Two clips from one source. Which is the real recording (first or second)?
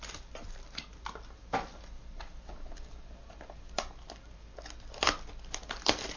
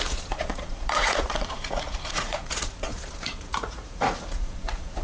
first